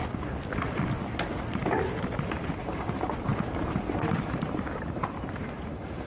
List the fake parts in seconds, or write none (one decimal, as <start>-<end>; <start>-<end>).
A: 2.6-3.3; 4.0-6.1